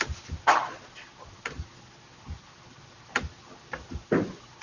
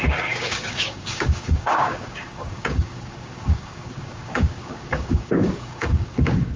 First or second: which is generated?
second